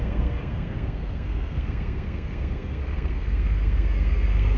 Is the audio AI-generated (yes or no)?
yes